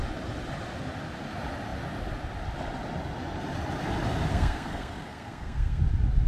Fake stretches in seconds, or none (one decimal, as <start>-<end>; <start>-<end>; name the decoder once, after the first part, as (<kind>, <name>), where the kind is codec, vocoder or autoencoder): 4.3-5.8 (codec, SNAC)